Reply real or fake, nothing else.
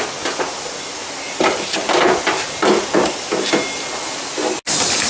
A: real